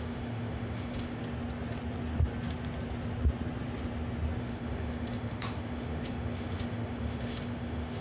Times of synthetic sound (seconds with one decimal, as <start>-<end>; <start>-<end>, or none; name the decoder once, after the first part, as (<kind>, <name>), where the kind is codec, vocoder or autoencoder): 0.0-1.2 (autoencoder, DAC-VAE); 4.4-8.0